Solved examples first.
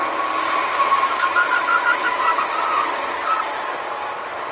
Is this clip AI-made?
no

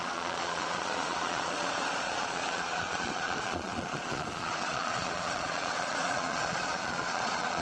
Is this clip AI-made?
yes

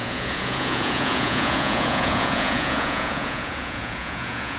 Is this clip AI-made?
yes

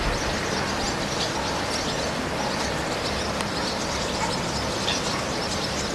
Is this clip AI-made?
no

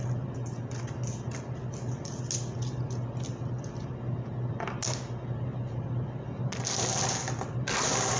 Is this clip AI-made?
no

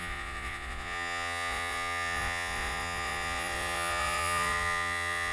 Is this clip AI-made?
yes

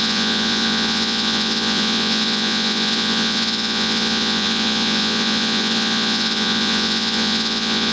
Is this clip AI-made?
yes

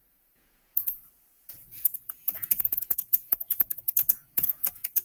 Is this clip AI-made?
yes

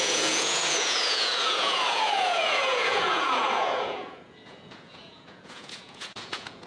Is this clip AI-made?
yes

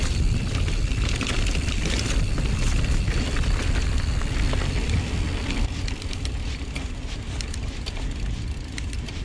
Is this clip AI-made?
no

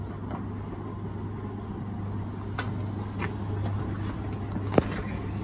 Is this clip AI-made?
no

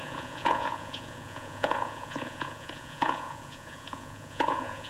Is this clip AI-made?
yes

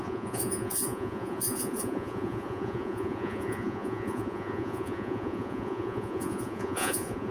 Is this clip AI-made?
yes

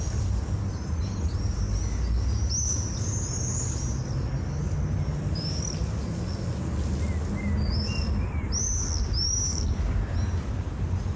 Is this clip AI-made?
no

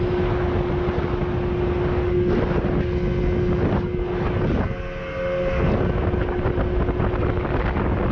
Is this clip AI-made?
no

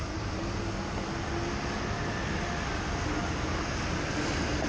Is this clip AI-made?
no